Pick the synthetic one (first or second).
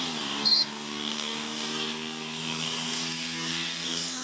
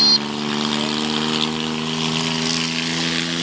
first